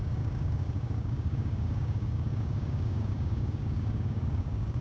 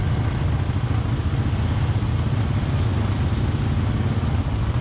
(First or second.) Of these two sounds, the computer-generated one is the first